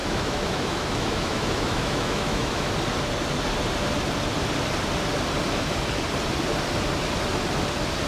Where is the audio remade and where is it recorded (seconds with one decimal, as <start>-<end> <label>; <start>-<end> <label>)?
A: 0.0-2.7 remade; 2.7-8.1 recorded